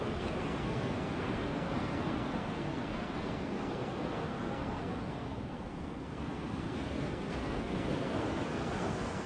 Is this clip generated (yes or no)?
yes